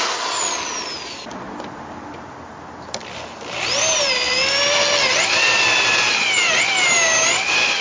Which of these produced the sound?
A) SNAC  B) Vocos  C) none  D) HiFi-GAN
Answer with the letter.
C